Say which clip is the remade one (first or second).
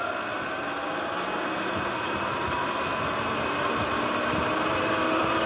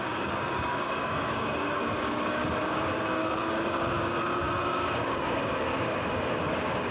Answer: second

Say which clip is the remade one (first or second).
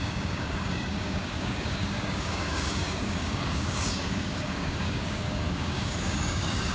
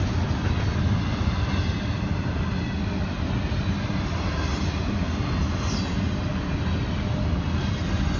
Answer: first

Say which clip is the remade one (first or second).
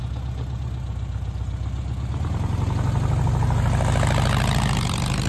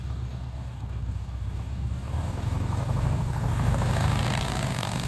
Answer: second